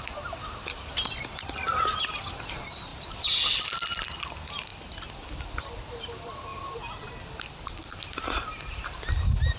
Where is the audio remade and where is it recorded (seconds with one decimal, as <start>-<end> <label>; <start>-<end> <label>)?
0.0-2.9 recorded; 2.9-4.2 remade; 4.2-4.7 recorded; 4.7-5.7 remade; 5.7-9.6 recorded